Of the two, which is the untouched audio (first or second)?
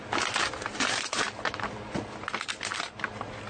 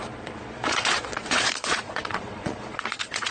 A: first